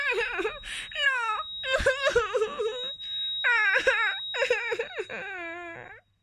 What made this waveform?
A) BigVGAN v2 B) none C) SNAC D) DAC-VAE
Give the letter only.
B